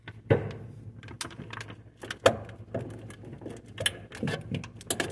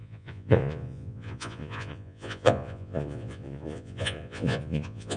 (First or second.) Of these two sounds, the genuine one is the first